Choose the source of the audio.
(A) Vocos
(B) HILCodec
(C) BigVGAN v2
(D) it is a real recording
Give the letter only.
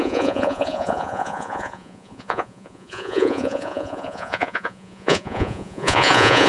A